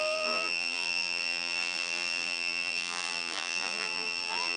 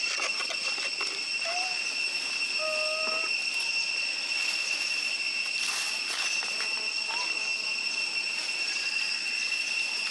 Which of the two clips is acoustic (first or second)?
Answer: second